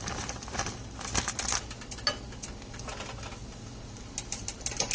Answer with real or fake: real